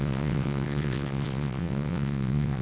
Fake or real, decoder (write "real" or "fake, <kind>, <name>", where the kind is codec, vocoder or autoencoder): fake, vocoder, WaveNeXt